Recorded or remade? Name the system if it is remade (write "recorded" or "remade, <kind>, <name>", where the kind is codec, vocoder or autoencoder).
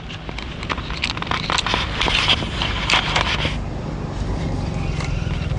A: recorded